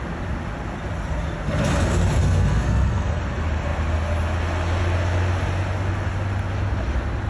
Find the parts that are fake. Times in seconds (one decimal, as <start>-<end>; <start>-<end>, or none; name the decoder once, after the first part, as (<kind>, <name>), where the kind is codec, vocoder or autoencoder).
2.2-3.2 (codec, SNAC)